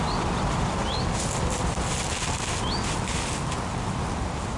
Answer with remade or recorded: recorded